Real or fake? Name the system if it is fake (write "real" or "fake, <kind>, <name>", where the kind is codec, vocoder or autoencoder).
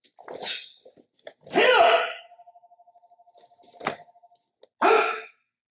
real